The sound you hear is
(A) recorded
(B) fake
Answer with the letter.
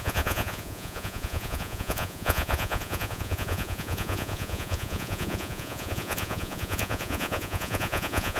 B